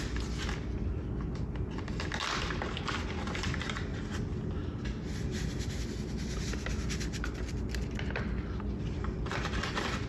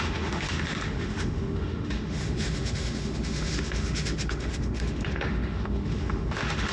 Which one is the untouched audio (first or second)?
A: first